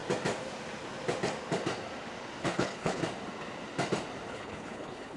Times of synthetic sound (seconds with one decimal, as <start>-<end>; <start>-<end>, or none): 2.4-3.0; 4.3-5.2